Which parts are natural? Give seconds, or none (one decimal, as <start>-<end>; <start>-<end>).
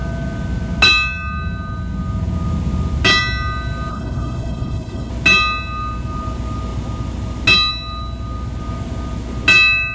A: 0.0-3.9; 5.1-9.9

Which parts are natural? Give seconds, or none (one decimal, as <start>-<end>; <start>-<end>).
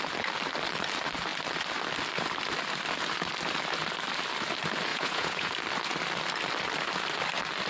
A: 0.0-4.9; 5.5-7.7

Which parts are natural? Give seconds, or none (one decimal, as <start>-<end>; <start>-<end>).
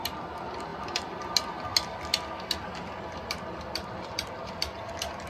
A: 0.0-5.3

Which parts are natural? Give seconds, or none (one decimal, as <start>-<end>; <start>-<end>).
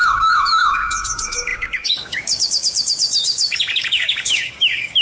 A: none